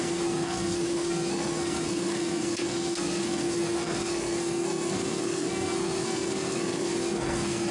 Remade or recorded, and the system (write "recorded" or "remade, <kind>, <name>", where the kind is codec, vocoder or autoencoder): remade, codec, SNAC